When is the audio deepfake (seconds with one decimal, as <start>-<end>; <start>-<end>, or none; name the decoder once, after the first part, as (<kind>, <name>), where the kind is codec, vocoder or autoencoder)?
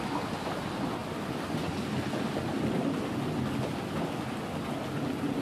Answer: none